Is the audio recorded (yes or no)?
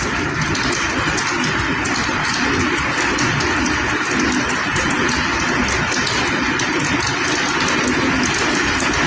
yes